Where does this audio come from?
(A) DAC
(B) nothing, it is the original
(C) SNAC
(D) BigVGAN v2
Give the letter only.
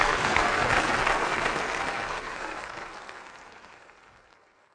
C